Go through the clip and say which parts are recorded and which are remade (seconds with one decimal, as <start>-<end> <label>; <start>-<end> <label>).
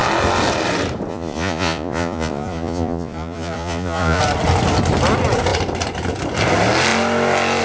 0.0-1.1 recorded; 1.1-4.2 remade; 4.2-7.6 recorded